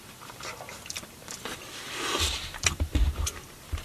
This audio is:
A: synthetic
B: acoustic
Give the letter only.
A